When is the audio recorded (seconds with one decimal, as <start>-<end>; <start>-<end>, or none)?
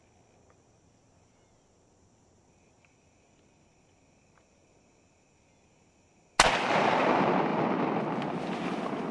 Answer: 0.0-9.1